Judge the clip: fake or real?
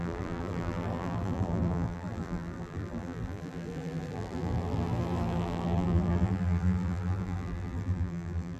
fake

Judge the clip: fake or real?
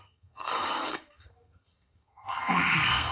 fake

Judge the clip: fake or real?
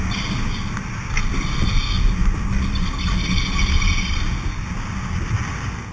real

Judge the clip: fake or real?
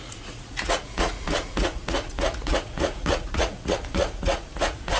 fake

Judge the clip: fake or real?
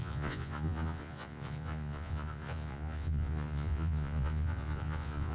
fake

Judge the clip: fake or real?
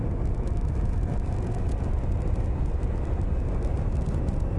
real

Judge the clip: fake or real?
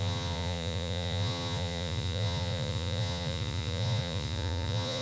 fake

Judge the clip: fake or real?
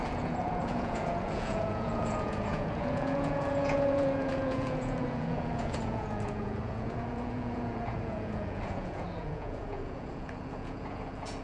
fake